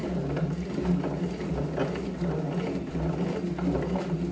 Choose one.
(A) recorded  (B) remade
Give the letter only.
A